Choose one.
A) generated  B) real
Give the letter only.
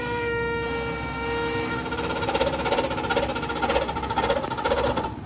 B